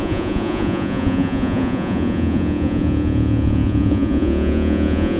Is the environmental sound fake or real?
fake